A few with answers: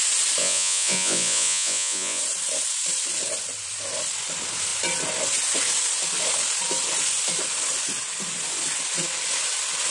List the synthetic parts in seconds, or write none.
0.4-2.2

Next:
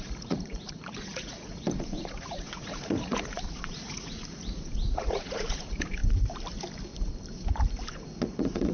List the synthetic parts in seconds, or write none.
0.0-6.0; 7.8-8.7

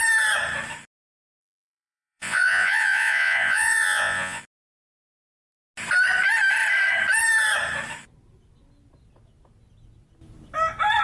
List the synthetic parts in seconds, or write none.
1.4-4.4

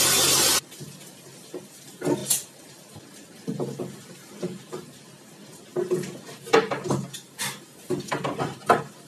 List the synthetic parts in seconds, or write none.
none

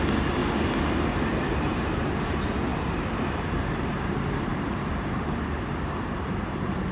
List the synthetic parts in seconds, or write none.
0.0-0.4; 0.9-6.9

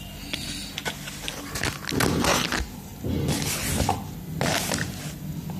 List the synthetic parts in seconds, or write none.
none

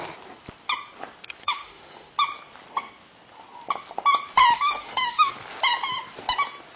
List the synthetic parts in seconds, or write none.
1.4-2.1; 4.5-5.3